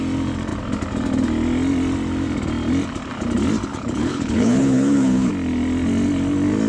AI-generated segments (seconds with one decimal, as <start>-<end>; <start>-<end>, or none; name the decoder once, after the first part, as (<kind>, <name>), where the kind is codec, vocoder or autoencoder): 3.7-5.3 (codec, HILCodec)